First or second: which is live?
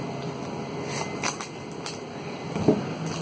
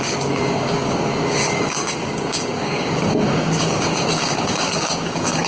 first